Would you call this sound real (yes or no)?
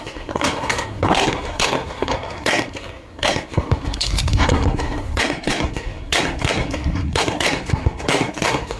no